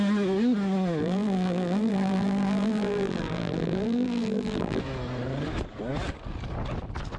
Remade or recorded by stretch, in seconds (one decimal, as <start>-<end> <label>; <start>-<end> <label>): 0.0-1.0 recorded; 1.0-4.8 remade; 4.8-7.2 recorded

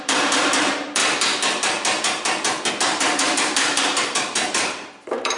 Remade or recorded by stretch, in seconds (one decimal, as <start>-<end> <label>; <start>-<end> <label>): 0.0-1.0 remade; 1.0-2.7 recorded; 2.7-5.4 remade

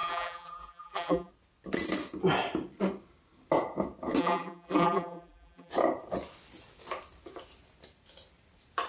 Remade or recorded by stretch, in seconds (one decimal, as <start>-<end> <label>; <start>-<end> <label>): 0.0-1.3 remade; 1.3-4.2 recorded; 4.2-5.7 remade; 5.7-8.9 recorded

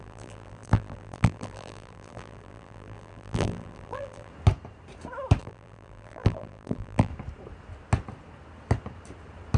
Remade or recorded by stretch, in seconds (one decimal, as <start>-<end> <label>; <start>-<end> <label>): 0.0-4.3 remade; 4.3-5.4 recorded; 5.4-7.1 remade; 7.1-9.6 recorded